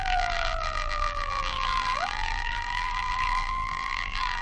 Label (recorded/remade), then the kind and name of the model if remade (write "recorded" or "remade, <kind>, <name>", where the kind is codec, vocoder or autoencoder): remade, vocoder, BigVGAN v2